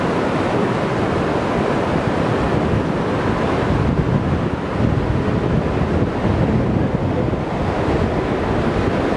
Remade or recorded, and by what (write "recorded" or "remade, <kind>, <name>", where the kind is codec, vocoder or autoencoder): recorded